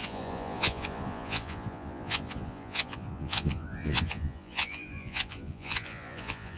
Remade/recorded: remade